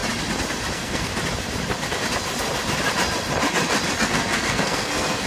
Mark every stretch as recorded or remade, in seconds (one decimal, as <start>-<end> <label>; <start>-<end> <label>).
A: 0.0-0.7 recorded; 0.7-1.1 remade; 1.1-4.0 recorded; 4.0-5.3 remade